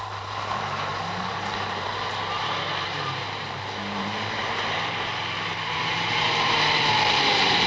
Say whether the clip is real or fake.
fake